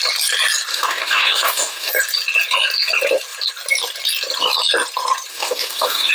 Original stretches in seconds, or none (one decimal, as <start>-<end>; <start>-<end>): 0.0-0.7; 1.9-5.3